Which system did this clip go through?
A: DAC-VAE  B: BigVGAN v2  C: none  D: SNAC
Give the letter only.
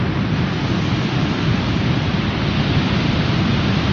C